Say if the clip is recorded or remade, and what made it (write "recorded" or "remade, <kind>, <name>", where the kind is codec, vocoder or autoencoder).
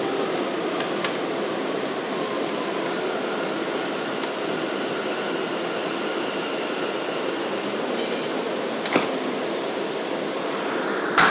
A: recorded